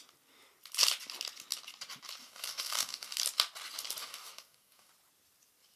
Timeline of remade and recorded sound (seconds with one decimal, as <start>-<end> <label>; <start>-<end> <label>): 0.0-2.2 recorded; 2.2-3.2 remade; 3.2-4.0 recorded; 4.0-4.9 remade; 4.9-5.8 recorded